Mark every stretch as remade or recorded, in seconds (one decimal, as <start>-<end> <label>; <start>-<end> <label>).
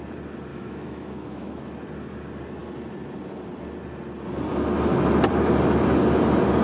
0.0-0.5 recorded; 0.5-1.6 remade; 1.6-6.6 recorded